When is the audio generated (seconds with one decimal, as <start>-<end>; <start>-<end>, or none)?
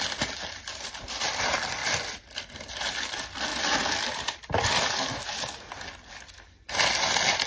none